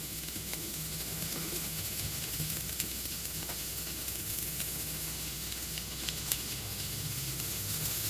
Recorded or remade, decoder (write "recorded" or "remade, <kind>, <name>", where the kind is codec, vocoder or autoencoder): remade, autoencoder, DAC-VAE